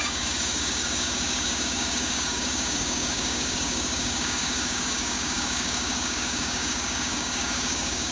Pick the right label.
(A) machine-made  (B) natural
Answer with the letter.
A